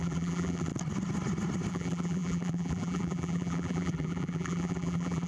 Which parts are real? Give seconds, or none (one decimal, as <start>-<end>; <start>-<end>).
0.7-1.7